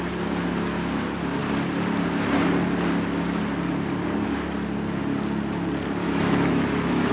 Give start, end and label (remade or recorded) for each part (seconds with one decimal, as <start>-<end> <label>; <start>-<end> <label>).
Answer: 0.0-6.0 recorded; 6.0-7.1 remade

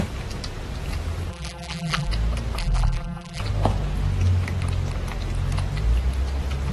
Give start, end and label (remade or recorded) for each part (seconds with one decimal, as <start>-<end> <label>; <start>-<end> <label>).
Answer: 0.0-1.3 recorded; 1.3-2.1 remade; 2.1-2.6 recorded; 2.6-3.4 remade; 3.4-6.7 recorded

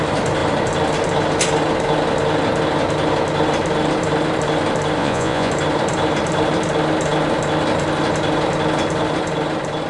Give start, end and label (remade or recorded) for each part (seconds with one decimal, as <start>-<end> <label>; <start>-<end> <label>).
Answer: 0.0-5.0 recorded; 5.0-5.5 remade; 5.5-9.9 recorded

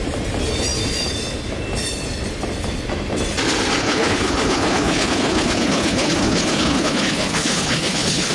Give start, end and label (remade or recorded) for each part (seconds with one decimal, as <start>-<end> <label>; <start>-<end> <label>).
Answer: 0.0-3.8 recorded; 3.8-8.3 remade